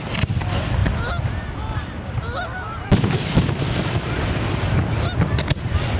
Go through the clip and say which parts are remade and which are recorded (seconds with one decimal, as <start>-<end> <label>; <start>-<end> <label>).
0.0-6.0 recorded